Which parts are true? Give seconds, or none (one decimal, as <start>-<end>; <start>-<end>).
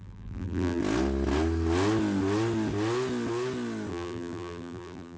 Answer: 0.8-3.9